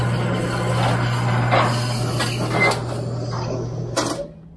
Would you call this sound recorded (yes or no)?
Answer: yes